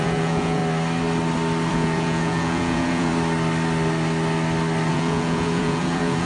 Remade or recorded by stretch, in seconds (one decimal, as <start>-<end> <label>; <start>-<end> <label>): 0.0-0.6 remade; 0.6-1.7 recorded; 1.7-3.1 remade; 3.1-4.9 recorded; 4.9-6.3 remade